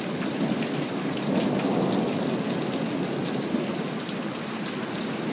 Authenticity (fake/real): real